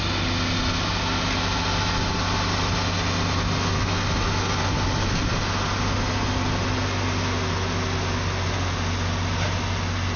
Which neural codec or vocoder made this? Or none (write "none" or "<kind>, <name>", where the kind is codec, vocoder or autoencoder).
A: none